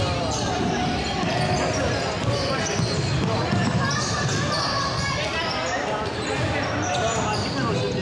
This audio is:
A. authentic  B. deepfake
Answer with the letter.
A